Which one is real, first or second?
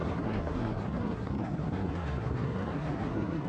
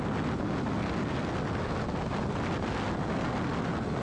second